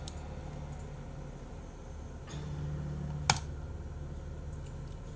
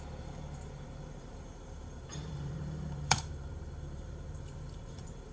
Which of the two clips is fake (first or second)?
second